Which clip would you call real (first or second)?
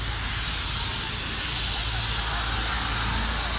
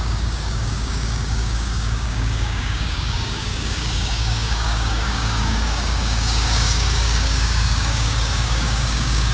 first